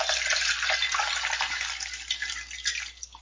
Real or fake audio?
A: real